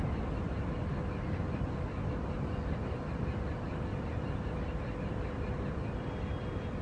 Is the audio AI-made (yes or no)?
no